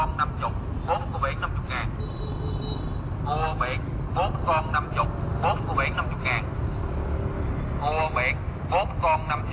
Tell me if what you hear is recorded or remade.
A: recorded